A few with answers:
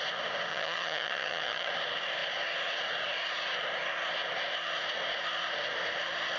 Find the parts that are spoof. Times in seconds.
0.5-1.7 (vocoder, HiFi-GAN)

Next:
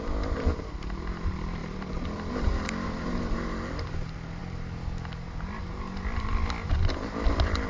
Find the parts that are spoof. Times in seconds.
none